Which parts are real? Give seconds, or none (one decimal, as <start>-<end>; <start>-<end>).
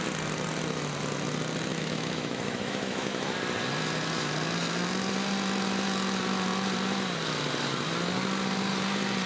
0.0-1.7; 3.3-9.3